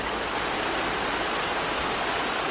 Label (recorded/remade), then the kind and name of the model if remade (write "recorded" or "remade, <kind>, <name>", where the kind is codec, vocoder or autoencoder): recorded